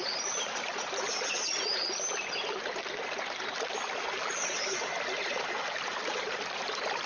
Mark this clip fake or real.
real